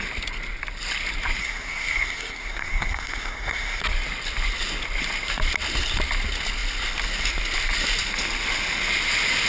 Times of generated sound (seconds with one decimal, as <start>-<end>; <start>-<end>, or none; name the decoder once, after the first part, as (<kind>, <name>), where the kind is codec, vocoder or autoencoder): 1.4-3.8 (codec, SNAC)